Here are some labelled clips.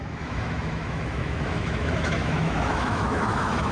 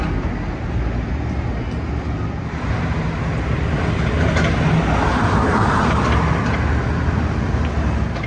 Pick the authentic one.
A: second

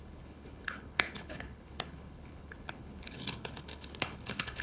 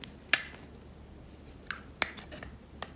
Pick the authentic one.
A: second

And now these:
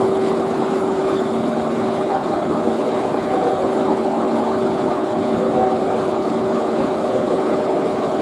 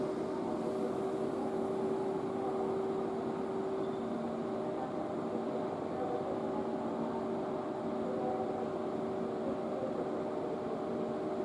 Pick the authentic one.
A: second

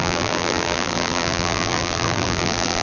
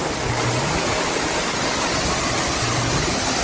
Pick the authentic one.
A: second